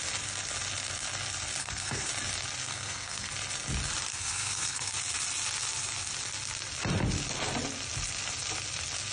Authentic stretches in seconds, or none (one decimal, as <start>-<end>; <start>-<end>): 0.0-1.6; 2.1-2.6; 3.3-4.1; 4.9-9.1

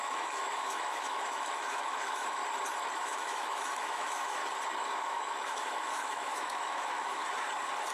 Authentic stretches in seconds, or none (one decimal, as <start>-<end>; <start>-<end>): 2.4-3.0; 4.4-5.0; 7.2-7.9

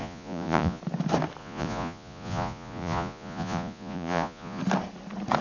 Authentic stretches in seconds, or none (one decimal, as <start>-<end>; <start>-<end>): 0.8-1.4; 4.6-5.4

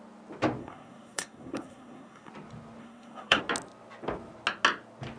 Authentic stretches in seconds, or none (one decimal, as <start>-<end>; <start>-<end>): 0.0-0.6; 2.3-2.8; 3.4-5.2

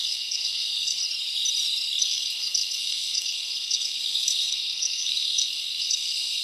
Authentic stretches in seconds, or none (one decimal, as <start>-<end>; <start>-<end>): 1.0-2.0

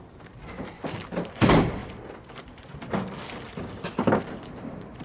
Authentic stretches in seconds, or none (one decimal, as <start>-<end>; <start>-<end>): 1.8-4.2

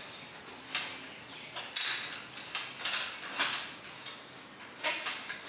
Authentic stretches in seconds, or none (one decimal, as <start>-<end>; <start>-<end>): 0.0-5.5